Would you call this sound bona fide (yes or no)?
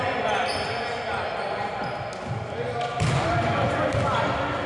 yes